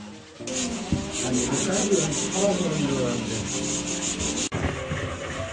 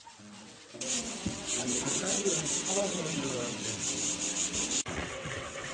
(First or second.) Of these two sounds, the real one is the first